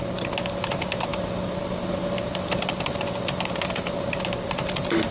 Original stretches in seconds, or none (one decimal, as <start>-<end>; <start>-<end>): 0.0-5.1